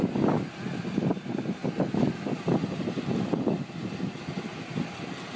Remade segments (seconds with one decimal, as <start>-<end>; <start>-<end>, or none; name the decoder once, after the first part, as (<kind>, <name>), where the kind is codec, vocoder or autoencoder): none